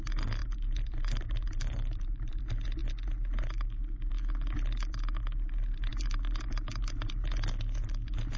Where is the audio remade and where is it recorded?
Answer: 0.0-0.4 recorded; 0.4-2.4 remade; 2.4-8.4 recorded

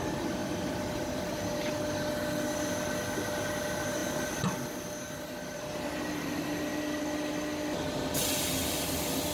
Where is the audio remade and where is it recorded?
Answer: 0.0-0.4 recorded; 0.4-1.7 remade; 1.7-4.0 recorded; 4.0-6.7 remade; 6.7-9.3 recorded

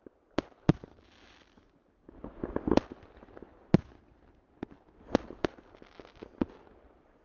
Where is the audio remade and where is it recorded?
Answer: 0.0-7.2 recorded